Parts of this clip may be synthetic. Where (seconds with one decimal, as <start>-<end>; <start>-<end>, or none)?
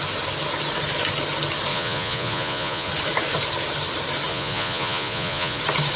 1.7-2.9; 4.3-5.6